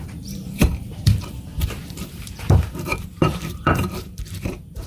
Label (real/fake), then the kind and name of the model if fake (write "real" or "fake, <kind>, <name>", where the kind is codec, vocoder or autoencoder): fake, vocoder, BigVGAN v2